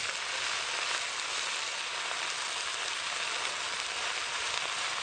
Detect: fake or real real